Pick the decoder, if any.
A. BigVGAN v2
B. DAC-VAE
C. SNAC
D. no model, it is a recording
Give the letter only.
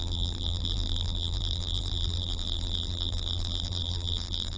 A